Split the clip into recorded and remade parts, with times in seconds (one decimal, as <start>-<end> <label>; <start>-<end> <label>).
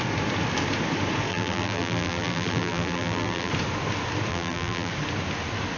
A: 0.0-1.3 recorded; 1.3-3.5 remade; 3.5-4.3 recorded; 4.3-4.9 remade; 4.9-5.8 recorded